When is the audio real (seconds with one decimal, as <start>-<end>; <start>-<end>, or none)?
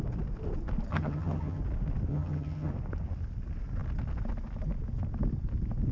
0.0-0.9; 1.6-2.1; 2.7-5.9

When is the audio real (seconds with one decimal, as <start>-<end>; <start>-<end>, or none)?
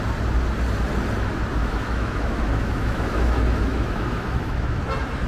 0.0-1.6; 4.8-5.3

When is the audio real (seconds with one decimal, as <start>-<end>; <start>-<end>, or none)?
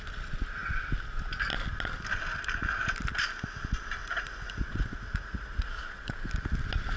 0.0-4.0; 6.3-7.0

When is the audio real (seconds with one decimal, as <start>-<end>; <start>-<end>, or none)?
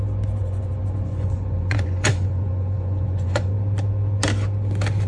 0.0-0.4; 3.5-5.1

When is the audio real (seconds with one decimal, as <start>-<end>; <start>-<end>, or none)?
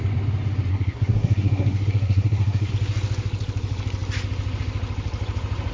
0.0-0.7; 2.7-5.7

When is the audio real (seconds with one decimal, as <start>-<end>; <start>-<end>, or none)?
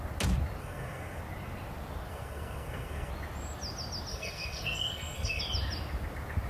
0.0-0.6; 1.2-2.1; 3.1-4.1; 5.4-6.5